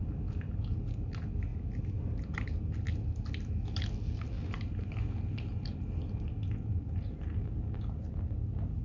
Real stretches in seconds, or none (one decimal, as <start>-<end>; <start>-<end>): 0.0-8.8